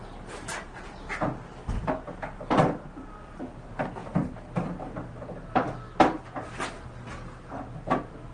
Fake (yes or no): no